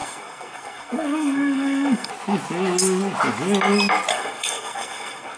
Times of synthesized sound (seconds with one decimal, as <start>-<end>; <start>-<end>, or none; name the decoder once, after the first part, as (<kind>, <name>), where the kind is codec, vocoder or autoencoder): 0.0-2.1 (codec, SNAC); 4.1-5.4